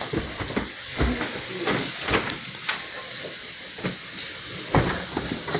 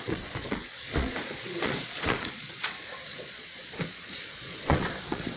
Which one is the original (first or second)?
first